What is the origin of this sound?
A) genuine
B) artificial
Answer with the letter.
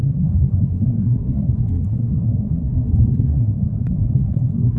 B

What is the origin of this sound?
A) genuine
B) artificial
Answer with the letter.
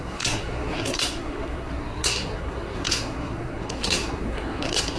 B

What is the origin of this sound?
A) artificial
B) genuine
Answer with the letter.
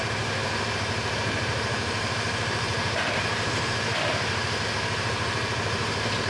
A